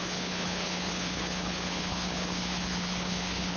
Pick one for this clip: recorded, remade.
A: remade